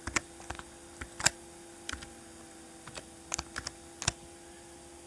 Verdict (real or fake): real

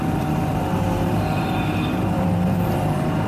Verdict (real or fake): fake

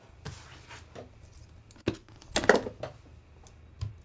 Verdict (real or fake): real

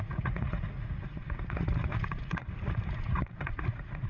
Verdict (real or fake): fake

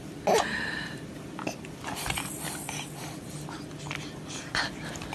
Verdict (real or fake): real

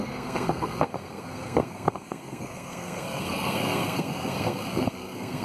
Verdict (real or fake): fake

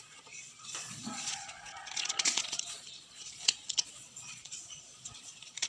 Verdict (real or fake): fake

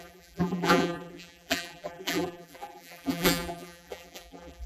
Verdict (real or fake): fake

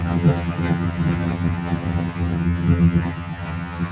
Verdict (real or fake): fake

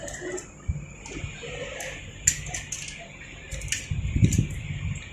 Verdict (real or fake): real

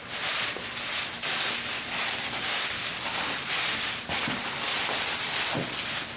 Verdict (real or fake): real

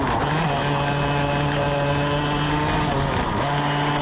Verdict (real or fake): real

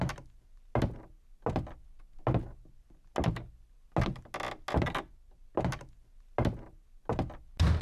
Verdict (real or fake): real